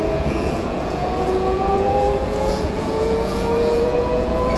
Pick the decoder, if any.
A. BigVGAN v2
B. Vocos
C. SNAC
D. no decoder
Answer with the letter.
B